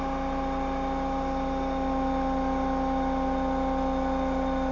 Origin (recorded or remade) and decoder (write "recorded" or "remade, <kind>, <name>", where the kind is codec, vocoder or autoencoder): recorded